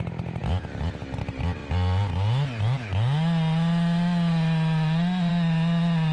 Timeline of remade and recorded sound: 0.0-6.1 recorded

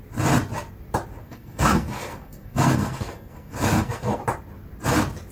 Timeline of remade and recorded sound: 0.0-1.2 recorded; 1.2-4.2 remade; 4.2-5.3 recorded

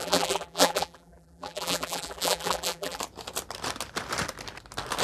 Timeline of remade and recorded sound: 0.0-3.0 remade; 3.0-5.0 recorded

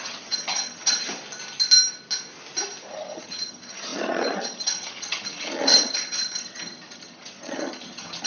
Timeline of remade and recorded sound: 0.0-1.1 remade; 1.1-2.9 recorded; 2.9-8.3 remade

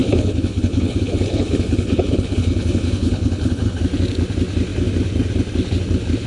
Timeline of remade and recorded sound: 0.0-3.8 remade; 3.8-6.3 recorded